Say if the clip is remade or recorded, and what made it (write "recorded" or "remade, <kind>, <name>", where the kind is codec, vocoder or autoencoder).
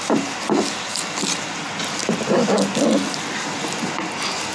recorded